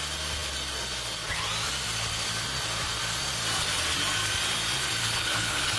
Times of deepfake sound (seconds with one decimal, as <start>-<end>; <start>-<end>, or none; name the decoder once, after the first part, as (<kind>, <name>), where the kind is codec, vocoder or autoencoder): 5.0-5.8 (codec, HILCodec)